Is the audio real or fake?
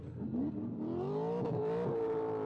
real